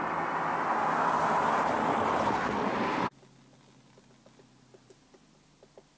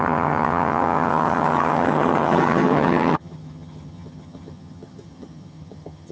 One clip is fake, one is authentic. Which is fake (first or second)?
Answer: second